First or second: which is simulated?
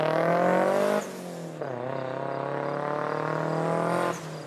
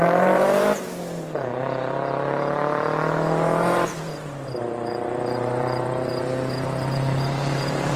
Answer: second